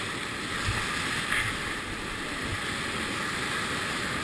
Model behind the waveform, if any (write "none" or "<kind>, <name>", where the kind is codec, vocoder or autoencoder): none